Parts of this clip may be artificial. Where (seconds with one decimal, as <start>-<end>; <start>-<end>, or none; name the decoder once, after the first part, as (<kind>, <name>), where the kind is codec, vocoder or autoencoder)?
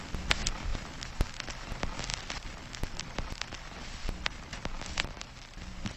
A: 0.7-1.4 (vocoder, BigVGAN v2); 2.1-6.0